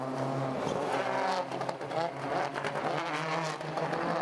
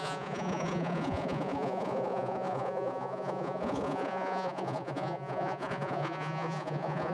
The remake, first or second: second